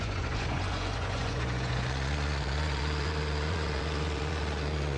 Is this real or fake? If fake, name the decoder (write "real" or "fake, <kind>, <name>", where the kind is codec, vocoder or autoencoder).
fake, vocoder, Vocos